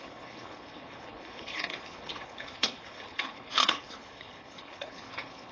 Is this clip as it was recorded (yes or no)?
no